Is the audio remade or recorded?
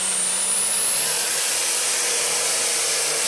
recorded